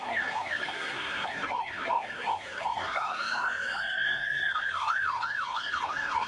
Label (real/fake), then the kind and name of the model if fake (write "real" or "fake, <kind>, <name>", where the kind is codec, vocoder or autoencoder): fake, codec, SNAC